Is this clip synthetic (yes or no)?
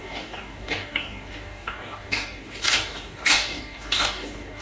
yes